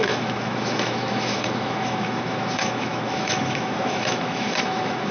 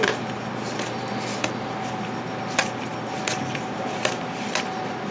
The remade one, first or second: first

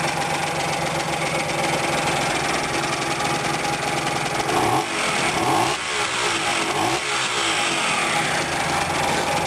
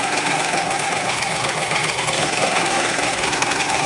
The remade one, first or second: second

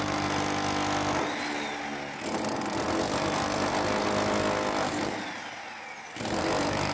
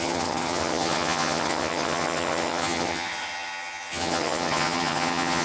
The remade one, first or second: second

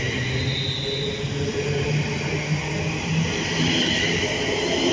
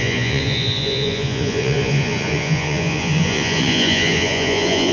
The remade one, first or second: second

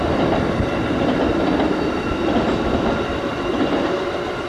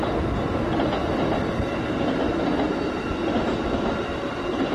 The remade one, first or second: first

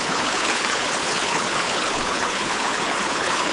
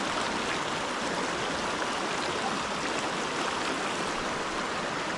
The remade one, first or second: first